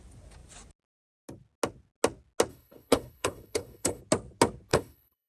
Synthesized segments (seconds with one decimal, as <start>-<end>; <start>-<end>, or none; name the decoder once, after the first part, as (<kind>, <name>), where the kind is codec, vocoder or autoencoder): 2.5-4.0 (codec, HILCodec); 4.7-5.3